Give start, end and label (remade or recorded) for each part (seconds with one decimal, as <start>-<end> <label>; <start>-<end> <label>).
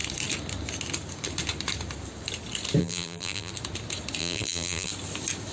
0.0-2.8 recorded; 2.8-3.5 remade; 3.5-4.2 recorded; 4.2-4.9 remade; 4.9-5.5 recorded